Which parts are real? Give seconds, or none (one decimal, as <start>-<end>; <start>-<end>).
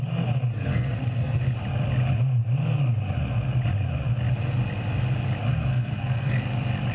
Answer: 0.0-0.7; 1.4-5.7; 6.4-6.9